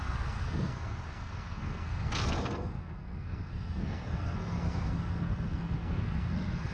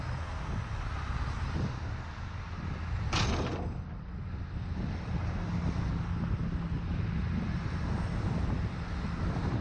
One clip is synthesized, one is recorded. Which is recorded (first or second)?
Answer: second